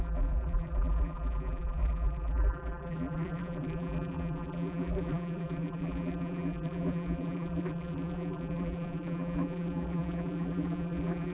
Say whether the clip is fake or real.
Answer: fake